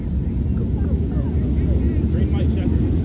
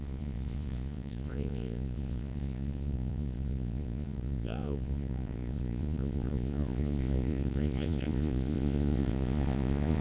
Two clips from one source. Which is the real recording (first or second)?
first